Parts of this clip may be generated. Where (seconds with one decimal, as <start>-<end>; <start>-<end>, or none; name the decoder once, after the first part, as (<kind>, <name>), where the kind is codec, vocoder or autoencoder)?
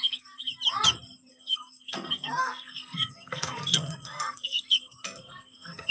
0.0-0.5 (codec, SNAC); 1.3-5.9